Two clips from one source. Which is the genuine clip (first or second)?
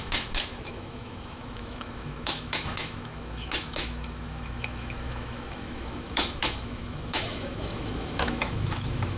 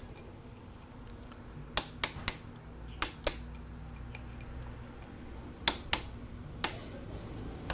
second